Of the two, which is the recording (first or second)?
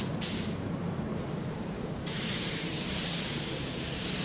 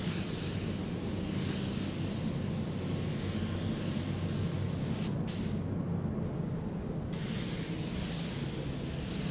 second